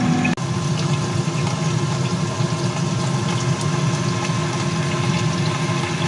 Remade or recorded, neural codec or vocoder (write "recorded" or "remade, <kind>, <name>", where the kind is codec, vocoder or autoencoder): recorded